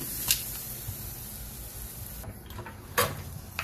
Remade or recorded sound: recorded